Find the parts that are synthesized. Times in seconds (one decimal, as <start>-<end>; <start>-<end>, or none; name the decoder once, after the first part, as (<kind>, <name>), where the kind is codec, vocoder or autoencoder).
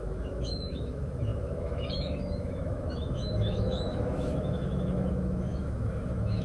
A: 0.0-6.4 (autoencoder, DAC-VAE)